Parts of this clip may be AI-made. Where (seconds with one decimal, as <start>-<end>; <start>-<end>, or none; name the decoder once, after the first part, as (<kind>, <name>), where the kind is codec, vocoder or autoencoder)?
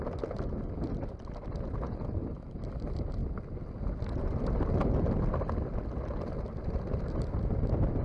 none